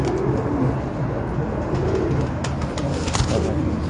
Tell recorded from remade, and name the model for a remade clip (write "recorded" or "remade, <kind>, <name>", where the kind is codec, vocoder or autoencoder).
recorded